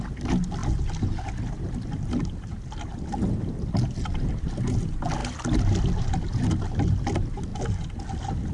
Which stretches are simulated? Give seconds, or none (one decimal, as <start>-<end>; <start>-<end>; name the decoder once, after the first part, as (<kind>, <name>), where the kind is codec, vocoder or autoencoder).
none